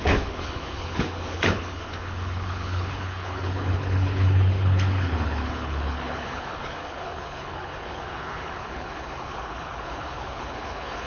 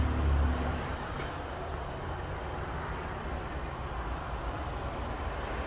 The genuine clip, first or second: second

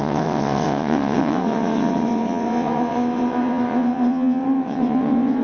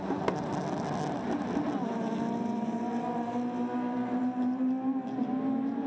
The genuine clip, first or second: second